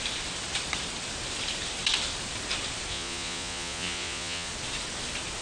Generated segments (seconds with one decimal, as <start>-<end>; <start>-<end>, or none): 2.9-4.5